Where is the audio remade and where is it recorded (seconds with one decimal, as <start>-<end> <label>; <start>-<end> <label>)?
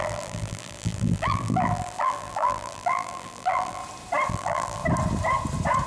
0.0-3.8 remade; 3.8-4.3 recorded; 4.3-4.8 remade; 4.8-5.9 recorded